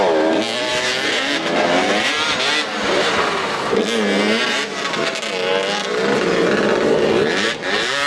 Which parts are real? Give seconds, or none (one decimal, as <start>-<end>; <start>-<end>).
0.0-8.1